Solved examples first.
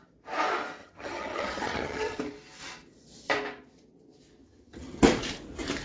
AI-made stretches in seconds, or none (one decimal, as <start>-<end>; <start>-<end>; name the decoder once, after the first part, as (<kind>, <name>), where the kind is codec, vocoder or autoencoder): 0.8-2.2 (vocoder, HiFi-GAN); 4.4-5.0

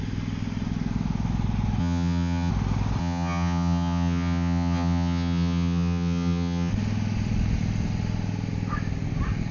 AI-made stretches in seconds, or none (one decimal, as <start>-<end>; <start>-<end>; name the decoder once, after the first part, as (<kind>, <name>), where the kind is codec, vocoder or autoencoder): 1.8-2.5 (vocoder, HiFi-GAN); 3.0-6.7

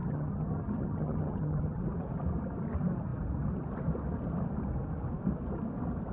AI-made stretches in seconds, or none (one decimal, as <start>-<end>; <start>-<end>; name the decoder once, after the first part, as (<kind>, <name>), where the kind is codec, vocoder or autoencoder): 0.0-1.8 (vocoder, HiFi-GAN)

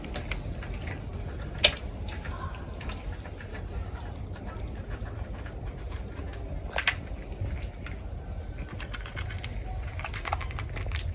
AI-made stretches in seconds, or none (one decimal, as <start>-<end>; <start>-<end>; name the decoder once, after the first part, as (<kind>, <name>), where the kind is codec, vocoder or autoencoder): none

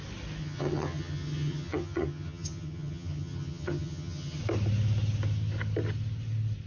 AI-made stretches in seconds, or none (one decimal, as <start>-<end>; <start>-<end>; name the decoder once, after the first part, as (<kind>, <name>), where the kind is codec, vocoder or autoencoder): 0.4-4.4 (vocoder, HiFi-GAN)

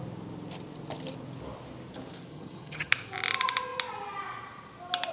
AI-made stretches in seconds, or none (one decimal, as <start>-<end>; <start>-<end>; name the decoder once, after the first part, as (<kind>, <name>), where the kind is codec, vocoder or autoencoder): 2.3-2.9 (vocoder, HiFi-GAN)

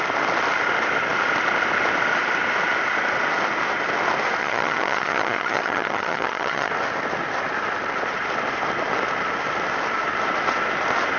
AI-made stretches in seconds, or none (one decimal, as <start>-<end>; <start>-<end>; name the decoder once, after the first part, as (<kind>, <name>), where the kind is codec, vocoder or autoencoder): 4.4-6.7 (vocoder, HiFi-GAN)

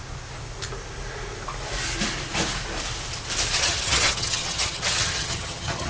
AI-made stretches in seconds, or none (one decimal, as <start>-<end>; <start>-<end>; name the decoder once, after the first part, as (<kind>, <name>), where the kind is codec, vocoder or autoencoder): 3.5-5.9 (vocoder, HiFi-GAN)